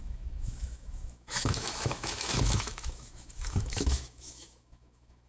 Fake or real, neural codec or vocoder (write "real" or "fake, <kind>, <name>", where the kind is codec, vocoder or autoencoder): fake, autoencoder, DAC-VAE